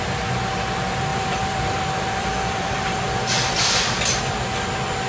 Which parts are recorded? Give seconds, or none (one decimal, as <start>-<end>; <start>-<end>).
0.0-1.1; 4.2-5.1